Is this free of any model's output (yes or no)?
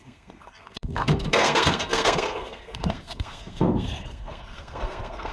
no